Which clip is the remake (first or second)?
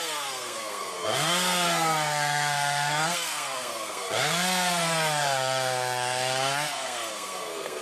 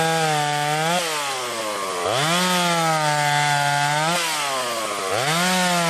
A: first